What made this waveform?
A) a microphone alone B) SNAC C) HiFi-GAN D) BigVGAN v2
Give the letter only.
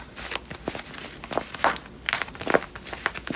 A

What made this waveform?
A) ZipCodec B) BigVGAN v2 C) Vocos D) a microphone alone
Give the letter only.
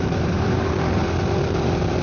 B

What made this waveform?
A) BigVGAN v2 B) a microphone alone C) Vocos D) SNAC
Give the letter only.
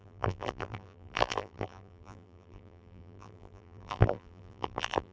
A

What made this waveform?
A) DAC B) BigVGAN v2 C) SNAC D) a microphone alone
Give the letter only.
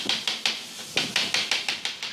D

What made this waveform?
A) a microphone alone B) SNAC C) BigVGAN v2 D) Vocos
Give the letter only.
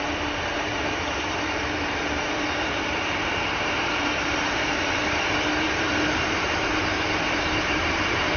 C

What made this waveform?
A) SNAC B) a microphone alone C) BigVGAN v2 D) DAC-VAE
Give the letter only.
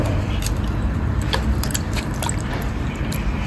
C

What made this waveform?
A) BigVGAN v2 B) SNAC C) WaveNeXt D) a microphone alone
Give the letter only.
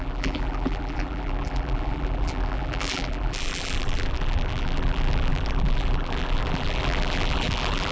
A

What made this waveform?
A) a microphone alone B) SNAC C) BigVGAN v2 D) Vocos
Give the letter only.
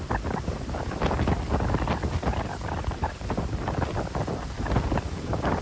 C